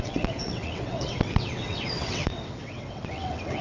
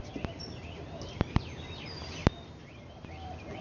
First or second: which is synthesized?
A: first